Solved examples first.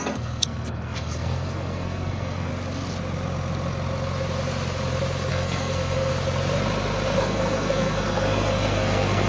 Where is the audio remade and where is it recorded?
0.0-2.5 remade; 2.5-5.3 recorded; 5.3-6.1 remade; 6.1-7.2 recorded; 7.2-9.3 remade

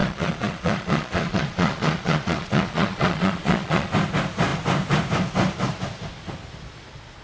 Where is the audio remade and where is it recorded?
0.0-3.9 remade; 3.9-7.2 recorded

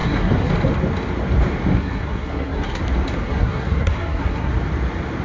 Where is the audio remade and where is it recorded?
0.0-0.5 remade; 0.5-1.7 recorded; 1.7-2.8 remade; 2.8-3.2 recorded; 3.2-4.5 remade; 4.5-5.2 recorded